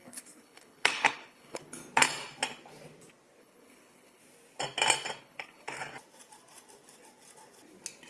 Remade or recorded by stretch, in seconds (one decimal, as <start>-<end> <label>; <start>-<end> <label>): 0.0-1.8 remade; 1.8-3.4 recorded; 3.4-4.2 remade; 4.2-5.2 recorded; 5.2-5.9 remade; 5.9-8.1 recorded